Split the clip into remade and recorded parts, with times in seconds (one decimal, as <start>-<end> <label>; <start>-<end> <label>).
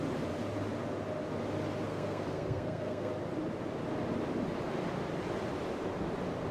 0.0-1.9 recorded; 1.9-3.1 remade; 3.1-6.5 recorded